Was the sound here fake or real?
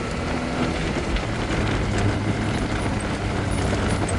real